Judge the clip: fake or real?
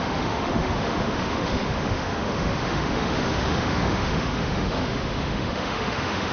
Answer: fake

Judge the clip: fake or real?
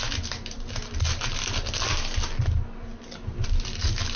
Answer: real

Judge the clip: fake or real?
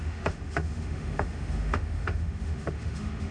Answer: fake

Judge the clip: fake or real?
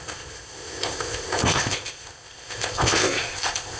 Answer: fake